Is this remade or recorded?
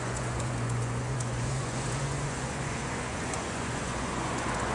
remade